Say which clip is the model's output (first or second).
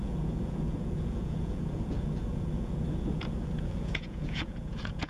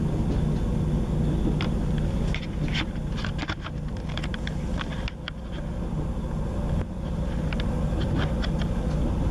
first